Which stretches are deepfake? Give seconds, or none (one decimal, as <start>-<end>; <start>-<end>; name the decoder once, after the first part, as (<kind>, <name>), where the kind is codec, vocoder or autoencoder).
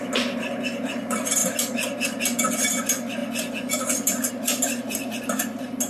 none